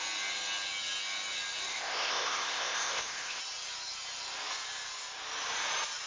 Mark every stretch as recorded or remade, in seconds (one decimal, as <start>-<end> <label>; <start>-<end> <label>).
0.0-1.7 recorded; 1.7-3.4 remade; 3.4-6.1 recorded